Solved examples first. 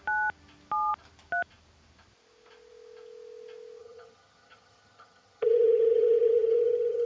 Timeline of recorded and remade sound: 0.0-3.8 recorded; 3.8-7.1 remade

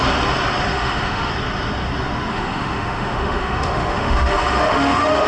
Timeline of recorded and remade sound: 0.0-0.7 recorded; 0.7-1.3 remade; 1.3-2.3 recorded; 2.3-5.3 remade

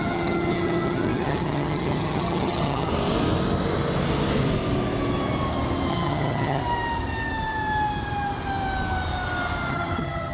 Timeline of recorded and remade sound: 0.0-2.9 remade; 2.9-5.9 recorded; 5.9-6.6 remade; 6.6-9.7 recorded; 9.7-10.3 remade

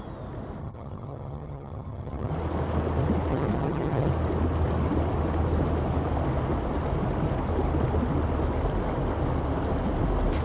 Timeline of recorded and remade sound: 0.0-0.6 recorded; 0.6-2.3 remade; 2.3-3.3 recorded; 3.3-4.1 remade; 4.1-10.4 recorded

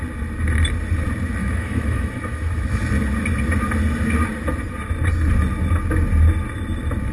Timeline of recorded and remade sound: 0.0-1.4 recorded; 1.4-2.8 remade; 2.8-7.1 recorded